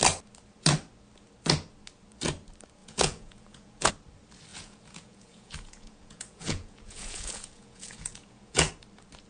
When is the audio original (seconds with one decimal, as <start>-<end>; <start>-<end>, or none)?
0.0-2.8; 3.9-4.5; 8.7-9.3